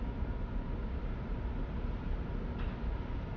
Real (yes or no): yes